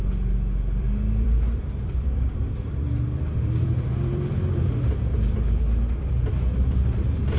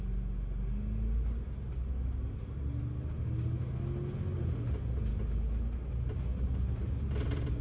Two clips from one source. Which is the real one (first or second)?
second